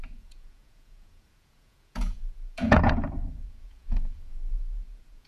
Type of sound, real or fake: fake